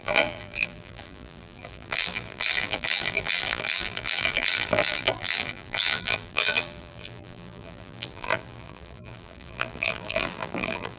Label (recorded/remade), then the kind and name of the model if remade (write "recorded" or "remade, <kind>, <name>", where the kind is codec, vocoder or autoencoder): remade, vocoder, BigVGAN v2